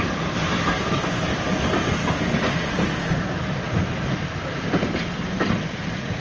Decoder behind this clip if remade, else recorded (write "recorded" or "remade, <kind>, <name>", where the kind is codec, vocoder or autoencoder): remade, vocoder, BigVGAN v2